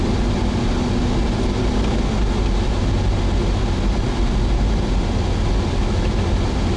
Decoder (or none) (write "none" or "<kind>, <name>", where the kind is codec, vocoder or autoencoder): none